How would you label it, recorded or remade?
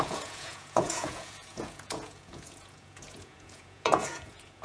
remade